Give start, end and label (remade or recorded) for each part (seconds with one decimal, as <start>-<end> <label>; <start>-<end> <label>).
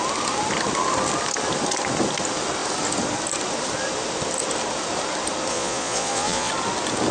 0.0-5.5 recorded; 5.5-6.5 remade; 6.5-7.1 recorded